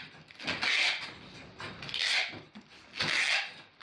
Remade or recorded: recorded